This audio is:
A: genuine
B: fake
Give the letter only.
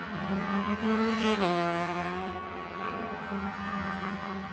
B